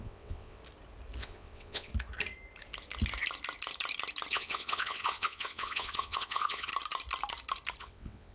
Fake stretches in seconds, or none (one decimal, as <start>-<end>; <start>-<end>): 0.0-0.6; 1.2-1.9; 4.3-6.7; 7.8-8.3